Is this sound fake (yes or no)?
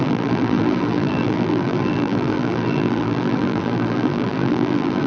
yes